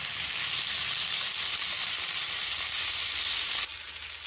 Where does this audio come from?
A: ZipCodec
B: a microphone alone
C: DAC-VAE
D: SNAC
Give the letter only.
B